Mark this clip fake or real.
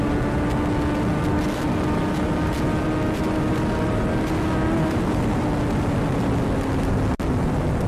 real